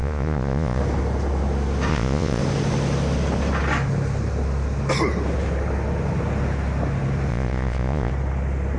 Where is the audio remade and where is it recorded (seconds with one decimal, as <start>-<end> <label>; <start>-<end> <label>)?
0.0-0.8 remade; 0.8-1.9 recorded; 1.9-2.4 remade; 2.4-7.3 recorded; 7.3-8.1 remade; 8.1-8.8 recorded